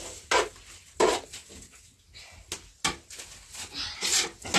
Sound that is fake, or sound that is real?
real